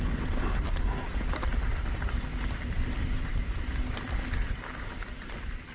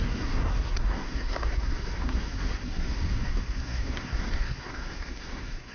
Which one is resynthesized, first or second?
second